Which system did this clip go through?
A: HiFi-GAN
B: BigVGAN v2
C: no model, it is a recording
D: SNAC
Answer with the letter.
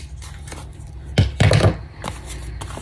C